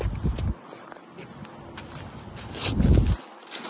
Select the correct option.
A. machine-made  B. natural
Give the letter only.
B